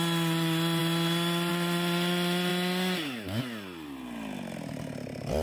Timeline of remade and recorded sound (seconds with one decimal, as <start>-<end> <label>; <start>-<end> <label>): 0.0-5.4 recorded